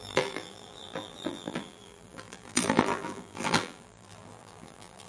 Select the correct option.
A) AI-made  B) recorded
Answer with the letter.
A